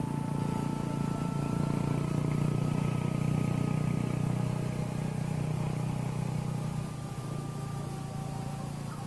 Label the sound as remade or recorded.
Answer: recorded